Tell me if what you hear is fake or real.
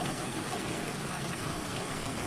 fake